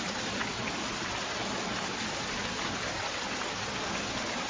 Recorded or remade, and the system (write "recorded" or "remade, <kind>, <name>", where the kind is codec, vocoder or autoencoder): recorded